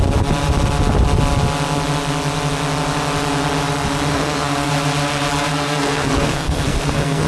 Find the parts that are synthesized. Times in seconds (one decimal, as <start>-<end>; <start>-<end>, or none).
4.1-4.7; 5.5-7.3